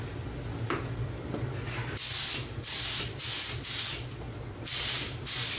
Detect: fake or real real